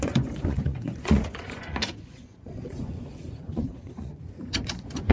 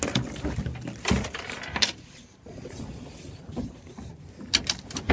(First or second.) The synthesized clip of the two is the first